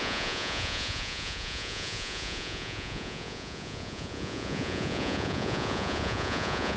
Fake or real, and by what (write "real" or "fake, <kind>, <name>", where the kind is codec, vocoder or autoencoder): fake, vocoder, Vocos